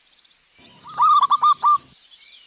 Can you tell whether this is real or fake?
real